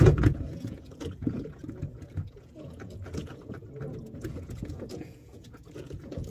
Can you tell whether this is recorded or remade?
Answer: remade